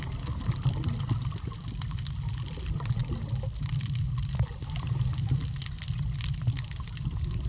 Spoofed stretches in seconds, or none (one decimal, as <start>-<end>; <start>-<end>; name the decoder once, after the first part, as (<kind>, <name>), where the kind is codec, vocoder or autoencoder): none